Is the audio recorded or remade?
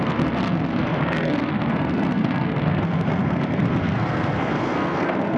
remade